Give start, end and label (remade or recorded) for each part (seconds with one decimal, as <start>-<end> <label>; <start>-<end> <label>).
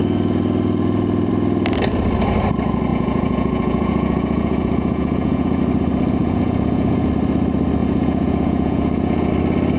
0.0-2.9 recorded; 2.9-5.6 remade; 5.6-6.2 recorded; 6.2-7.1 remade; 7.1-7.8 recorded; 7.8-9.3 remade; 9.3-9.8 recorded